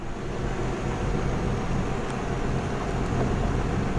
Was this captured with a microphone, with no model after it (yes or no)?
yes